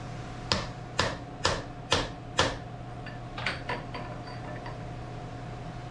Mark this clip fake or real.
real